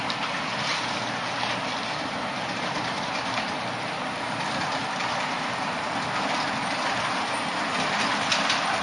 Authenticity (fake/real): real